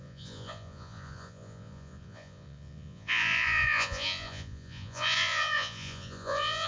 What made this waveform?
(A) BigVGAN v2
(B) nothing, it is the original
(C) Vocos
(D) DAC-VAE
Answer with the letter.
C